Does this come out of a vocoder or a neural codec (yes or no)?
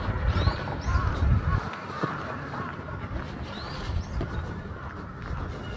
no